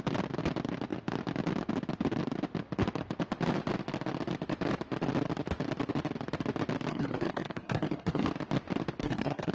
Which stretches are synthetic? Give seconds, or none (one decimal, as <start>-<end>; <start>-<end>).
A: 6.9-8.3; 9.0-9.5